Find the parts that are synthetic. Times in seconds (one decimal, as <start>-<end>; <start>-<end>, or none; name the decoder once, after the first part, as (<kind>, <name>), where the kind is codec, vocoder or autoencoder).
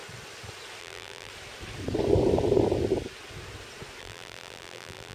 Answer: 0.8-1.3 (vocoder, BigVGAN v2); 4.0-5.1